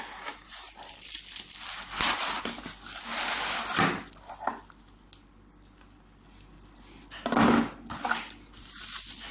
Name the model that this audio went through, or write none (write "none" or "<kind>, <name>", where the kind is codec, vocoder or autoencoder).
none